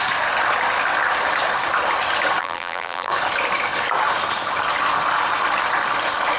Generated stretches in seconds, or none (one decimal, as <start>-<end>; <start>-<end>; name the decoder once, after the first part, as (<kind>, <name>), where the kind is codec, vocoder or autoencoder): 2.4-3.1 (vocoder, BigVGAN v2)